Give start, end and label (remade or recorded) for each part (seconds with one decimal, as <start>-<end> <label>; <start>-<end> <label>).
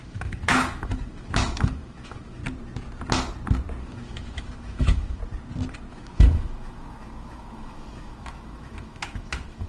0.0-2.4 remade; 2.4-3.8 recorded; 3.8-5.2 remade; 5.2-5.9 recorded; 5.9-9.7 remade